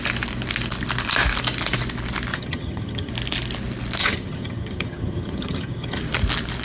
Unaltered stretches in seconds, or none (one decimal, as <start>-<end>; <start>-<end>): 0.0-2.3; 3.1-4.0; 6.0-6.6